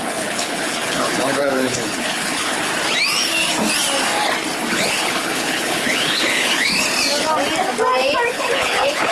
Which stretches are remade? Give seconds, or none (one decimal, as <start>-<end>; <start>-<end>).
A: 0.0-2.7; 4.7-6.7; 8.3-9.1